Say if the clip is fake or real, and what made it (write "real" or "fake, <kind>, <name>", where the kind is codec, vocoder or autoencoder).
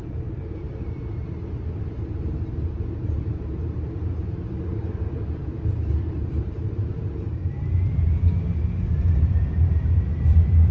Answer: fake, vocoder, BigVGAN v2